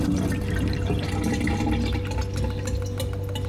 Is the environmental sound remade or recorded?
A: recorded